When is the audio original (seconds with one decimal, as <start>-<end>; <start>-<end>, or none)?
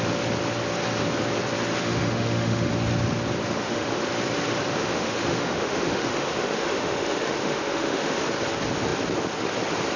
0.0-1.8; 2.7-3.4; 4.0-4.8; 8.2-10.0